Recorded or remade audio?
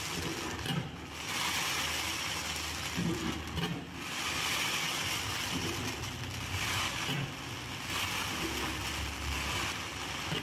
recorded